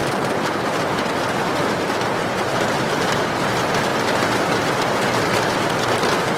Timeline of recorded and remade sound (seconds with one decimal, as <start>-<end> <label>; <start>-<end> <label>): 0.0-6.4 remade